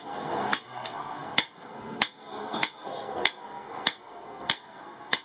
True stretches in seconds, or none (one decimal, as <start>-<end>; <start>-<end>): none